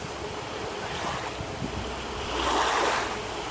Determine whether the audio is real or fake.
real